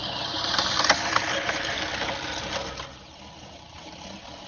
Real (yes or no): yes